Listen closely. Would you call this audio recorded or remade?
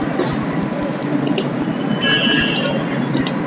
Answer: recorded